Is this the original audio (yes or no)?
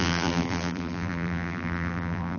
no